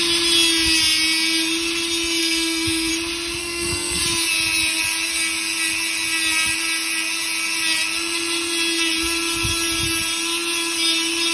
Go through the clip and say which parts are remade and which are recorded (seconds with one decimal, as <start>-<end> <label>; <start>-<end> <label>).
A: 0.0-2.2 recorded; 2.2-2.9 remade; 2.9-3.4 recorded; 3.4-4.0 remade; 4.0-11.3 recorded

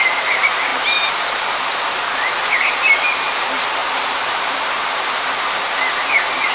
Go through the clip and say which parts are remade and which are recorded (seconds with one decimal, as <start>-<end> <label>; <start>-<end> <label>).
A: 0.0-0.7 recorded; 0.7-1.6 remade; 1.6-3.8 recorded; 3.8-6.5 remade

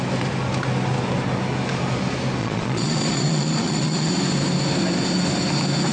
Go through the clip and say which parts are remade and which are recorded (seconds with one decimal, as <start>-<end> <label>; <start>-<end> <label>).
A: 0.0-2.4 recorded; 2.4-4.1 remade; 4.1-5.9 recorded

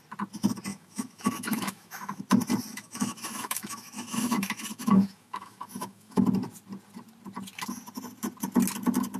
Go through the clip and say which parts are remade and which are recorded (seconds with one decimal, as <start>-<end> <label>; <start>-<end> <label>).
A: 0.0-0.7 recorded; 0.7-2.2 remade; 2.2-2.7 recorded; 2.7-6.2 remade; 6.2-9.2 recorded

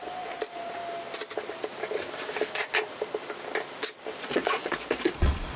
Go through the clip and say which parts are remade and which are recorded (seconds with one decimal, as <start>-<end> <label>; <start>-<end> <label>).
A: 0.0-0.8 remade; 0.8-4.2 recorded; 4.2-5.6 remade